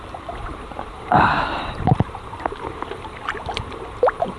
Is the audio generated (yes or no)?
yes